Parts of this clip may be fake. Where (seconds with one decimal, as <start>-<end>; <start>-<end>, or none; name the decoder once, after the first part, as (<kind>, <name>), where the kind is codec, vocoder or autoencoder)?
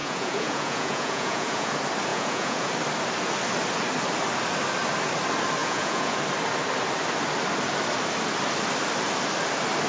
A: 0.0-1.7 (vocoder, Vocos); 2.1-2.7; 5.6-6.2